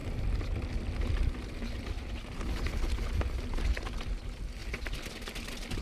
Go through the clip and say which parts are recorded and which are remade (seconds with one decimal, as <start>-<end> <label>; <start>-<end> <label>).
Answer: 0.0-2.3 remade; 2.3-5.8 recorded